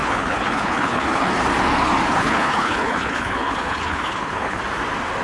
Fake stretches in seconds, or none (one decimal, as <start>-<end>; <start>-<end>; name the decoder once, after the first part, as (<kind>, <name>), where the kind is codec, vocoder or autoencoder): 0.0-1.3 (codec, HILCodec); 2.2-4.6